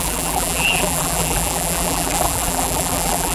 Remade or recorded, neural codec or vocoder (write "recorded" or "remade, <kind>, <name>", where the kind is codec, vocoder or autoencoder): remade, vocoder, BigVGAN v2